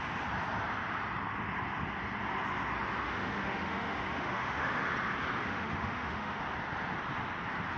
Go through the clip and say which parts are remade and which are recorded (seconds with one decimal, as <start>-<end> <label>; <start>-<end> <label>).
0.0-3.0 recorded; 3.0-4.8 remade; 4.8-5.4 recorded; 5.4-6.4 remade; 6.4-7.8 recorded